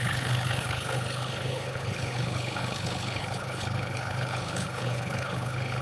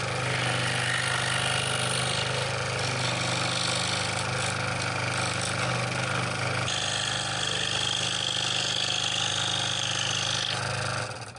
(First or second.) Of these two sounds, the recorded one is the second